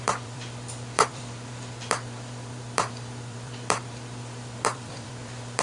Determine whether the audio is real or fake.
fake